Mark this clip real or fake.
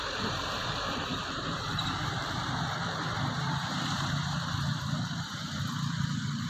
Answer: fake